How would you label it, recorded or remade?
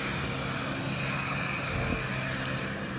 recorded